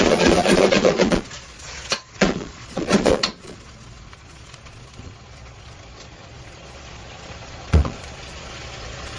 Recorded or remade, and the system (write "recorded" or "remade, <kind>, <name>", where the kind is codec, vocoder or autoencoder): remade, vocoder, Vocos